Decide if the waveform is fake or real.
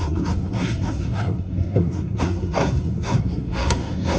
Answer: fake